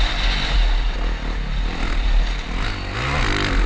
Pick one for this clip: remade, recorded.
recorded